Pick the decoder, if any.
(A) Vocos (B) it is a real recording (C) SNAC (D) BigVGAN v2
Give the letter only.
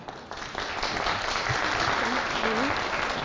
B